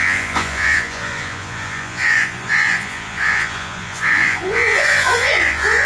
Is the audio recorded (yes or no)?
no